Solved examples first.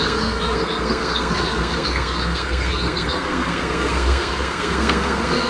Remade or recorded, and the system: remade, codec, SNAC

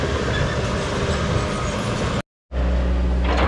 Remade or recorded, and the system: recorded